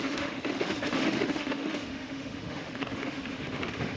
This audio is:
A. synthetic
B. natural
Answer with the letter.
A